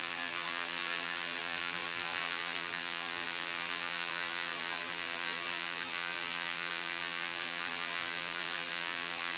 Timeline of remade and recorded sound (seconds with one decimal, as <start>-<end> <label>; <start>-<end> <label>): 0.0-9.4 remade